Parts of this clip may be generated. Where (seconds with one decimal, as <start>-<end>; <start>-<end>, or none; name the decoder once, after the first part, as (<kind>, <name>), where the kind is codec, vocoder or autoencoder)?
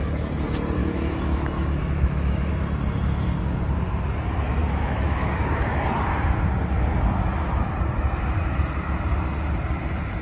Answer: 0.8-2.5 (autoencoder, DAC-VAE); 4.6-5.3